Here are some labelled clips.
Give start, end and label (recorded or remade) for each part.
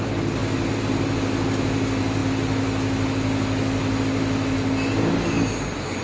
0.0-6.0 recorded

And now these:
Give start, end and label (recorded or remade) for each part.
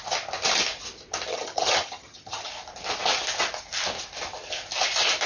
0.0-1.3 recorded; 1.3-2.5 remade; 2.5-5.3 recorded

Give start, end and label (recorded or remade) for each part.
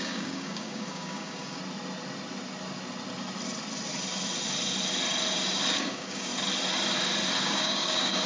0.0-1.6 remade; 1.6-5.7 recorded; 5.7-6.3 remade; 6.3-7.4 recorded; 7.4-8.3 remade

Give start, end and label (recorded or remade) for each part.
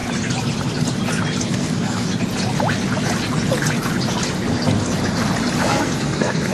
0.0-1.4 recorded; 1.4-2.1 remade; 2.1-5.6 recorded; 5.6-6.5 remade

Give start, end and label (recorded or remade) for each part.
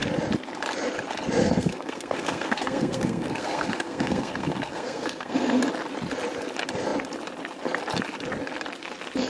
0.0-1.4 recorded; 1.4-5.6 remade; 5.6-9.3 recorded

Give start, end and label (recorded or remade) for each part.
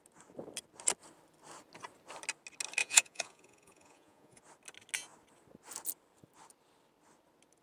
0.0-2.8 recorded; 2.8-4.4 remade; 4.4-7.6 recorded